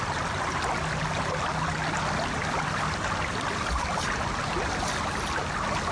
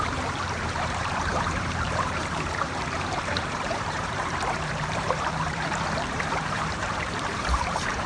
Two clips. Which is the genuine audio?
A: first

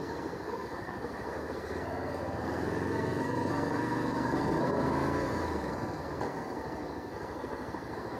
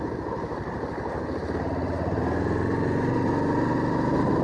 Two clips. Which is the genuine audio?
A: second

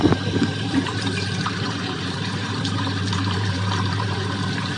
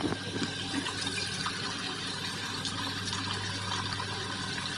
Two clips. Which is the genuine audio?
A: second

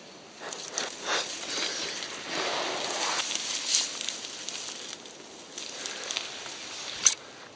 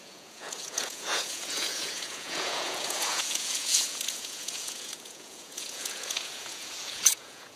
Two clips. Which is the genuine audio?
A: first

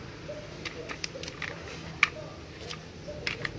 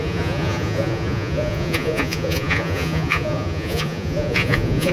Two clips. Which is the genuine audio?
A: first